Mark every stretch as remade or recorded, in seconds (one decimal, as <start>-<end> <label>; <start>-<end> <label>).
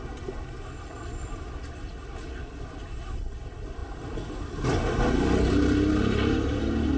0.0-7.0 recorded